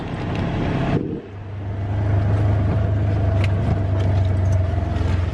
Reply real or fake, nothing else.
real